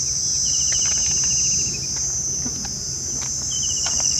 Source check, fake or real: real